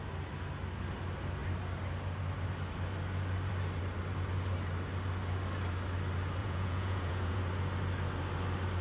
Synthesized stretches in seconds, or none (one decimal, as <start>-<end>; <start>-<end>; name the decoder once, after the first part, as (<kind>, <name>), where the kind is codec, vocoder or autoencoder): 6.4-7.4 (vocoder, Vocos)